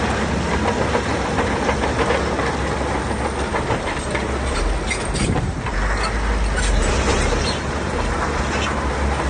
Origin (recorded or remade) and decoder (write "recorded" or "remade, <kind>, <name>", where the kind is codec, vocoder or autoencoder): recorded